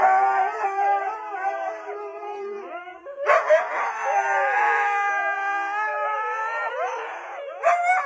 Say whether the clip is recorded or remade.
remade